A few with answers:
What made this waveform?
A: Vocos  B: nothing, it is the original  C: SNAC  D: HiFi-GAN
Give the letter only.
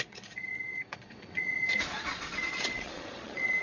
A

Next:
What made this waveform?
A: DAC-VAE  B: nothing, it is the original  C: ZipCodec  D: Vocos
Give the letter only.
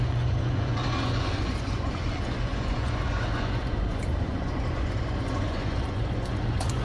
D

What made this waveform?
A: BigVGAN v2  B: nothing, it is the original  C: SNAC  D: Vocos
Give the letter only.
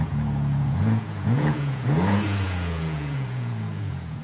D